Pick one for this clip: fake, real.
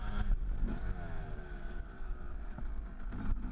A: real